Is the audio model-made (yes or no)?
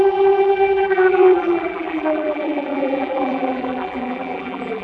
yes